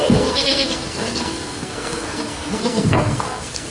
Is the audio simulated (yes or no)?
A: yes